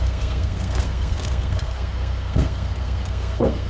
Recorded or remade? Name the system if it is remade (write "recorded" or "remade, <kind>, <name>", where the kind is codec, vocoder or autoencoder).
remade, codec, SNAC